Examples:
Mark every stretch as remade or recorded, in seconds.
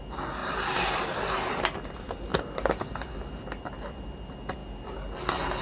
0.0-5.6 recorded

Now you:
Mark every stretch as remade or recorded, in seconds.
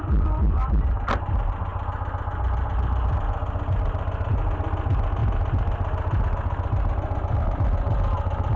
0.0-8.6 recorded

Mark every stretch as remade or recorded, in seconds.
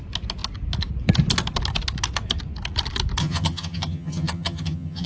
0.0-3.2 recorded; 3.2-5.1 remade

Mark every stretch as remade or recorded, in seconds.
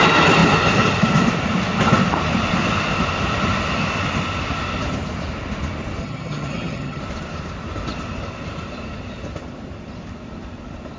0.0-6.0 recorded; 6.0-7.0 remade; 7.0-11.0 recorded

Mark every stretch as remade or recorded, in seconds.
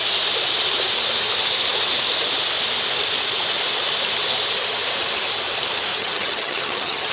0.0-5.9 recorded; 5.9-7.1 remade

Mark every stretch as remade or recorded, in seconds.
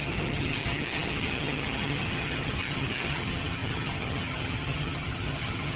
0.0-5.8 remade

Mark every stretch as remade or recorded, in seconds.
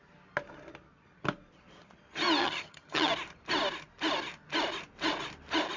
0.0-2.4 recorded; 2.4-3.1 remade; 3.1-5.8 recorded